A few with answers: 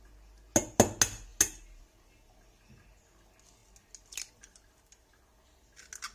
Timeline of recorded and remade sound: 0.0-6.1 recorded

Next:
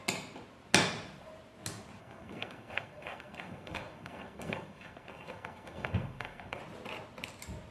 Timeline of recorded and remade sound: 0.0-2.0 recorded; 2.0-6.6 remade; 6.6-7.7 recorded

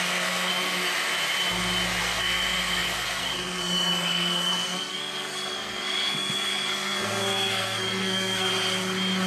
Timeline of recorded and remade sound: 0.0-0.5 remade; 0.5-2.0 recorded; 2.0-8.5 remade; 8.5-9.3 recorded

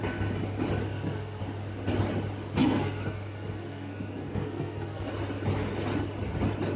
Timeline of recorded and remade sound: 0.0-0.8 recorded; 0.8-1.4 remade; 1.4-2.6 recorded; 2.6-5.1 remade; 5.1-6.8 recorded

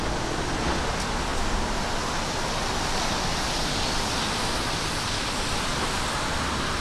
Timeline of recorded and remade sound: 0.0-6.8 recorded

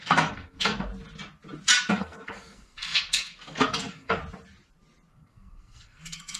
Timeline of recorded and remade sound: 0.0-0.9 remade; 0.9-1.9 recorded; 1.9-4.2 remade; 4.2-5.1 recorded; 5.1-6.4 remade

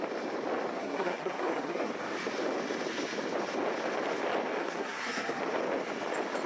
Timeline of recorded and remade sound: 0.0-0.8 recorded; 0.8-1.9 remade; 1.9-4.6 recorded; 4.6-5.4 remade; 5.4-6.5 recorded

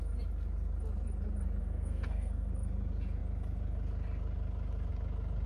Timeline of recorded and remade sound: 0.0-1.6 recorded; 1.6-2.5 remade; 2.5-5.5 recorded